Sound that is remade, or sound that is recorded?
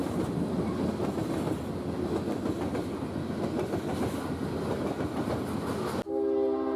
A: recorded